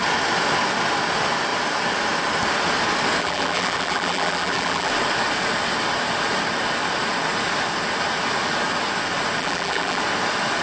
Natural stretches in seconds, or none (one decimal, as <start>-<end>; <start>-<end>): 0.0-3.2; 4.9-9.4; 10.0-10.6